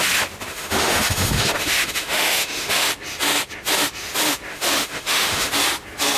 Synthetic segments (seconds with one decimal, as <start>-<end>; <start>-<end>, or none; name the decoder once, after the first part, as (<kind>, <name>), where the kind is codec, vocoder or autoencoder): 0.5-2.9 (autoencoder, DAC-VAE); 4.5-5.5